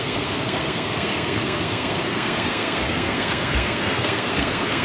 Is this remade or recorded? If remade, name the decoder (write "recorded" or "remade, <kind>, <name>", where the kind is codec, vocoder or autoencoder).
remade, codec, SNAC